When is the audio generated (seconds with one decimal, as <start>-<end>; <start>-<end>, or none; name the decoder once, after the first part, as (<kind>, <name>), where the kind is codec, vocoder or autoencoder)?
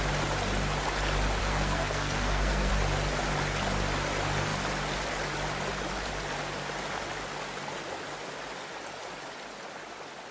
1.4-2.7 (codec, SNAC)